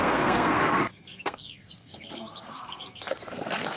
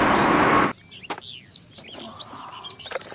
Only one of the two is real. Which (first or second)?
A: second